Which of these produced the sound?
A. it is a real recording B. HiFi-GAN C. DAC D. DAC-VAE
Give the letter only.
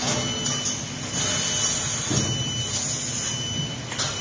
A